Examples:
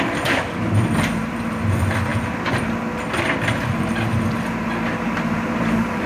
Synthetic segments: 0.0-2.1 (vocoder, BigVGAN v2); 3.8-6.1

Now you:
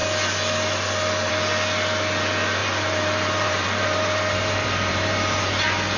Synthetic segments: 2.6-5.5 (vocoder, BigVGAN v2)

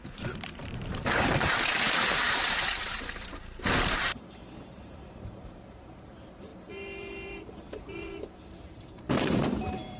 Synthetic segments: 0.0-10.0 (vocoder, BigVGAN v2)

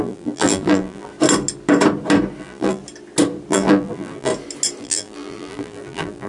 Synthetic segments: 0.0-1.1 (vocoder, BigVGAN v2); 2.4-2.8; 3.5-4.3; 4.8-6.3

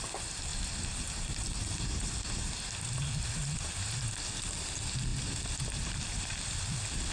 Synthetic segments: 0.5-1.9 (vocoder, BigVGAN v2)

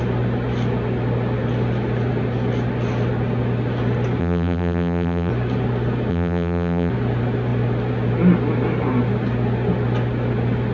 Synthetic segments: 4.2-5.3 (vocoder, BigVGAN v2); 6.1-6.9

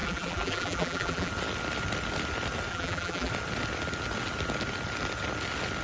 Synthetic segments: 0.0-1.3 (vocoder, BigVGAN v2); 2.7-3.3